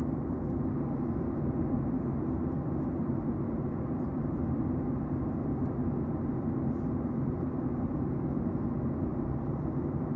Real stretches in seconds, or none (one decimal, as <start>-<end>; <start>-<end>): 0.0-9.1